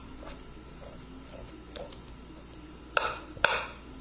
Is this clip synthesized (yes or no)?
no